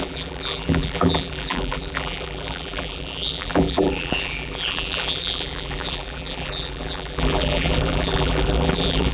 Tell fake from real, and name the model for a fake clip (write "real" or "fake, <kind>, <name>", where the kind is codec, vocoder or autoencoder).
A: fake, vocoder, BigVGAN v2